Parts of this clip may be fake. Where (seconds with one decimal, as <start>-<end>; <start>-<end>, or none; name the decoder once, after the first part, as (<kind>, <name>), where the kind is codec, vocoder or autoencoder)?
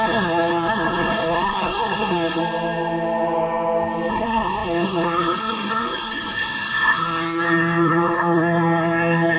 0.0-2.4 (codec, SNAC); 4.1-9.4